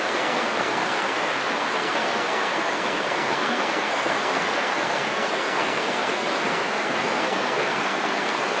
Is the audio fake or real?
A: fake